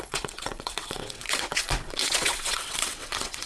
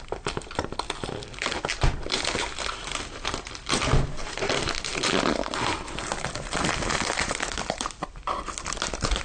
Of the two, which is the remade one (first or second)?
first